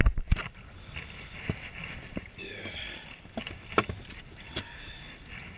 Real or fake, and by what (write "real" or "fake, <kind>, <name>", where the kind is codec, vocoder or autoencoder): real